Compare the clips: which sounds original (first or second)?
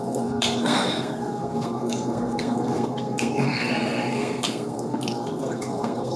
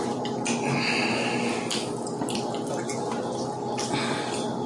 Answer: second